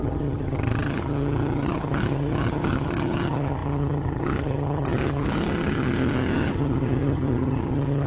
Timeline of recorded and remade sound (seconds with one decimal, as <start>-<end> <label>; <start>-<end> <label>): 0.0-8.1 remade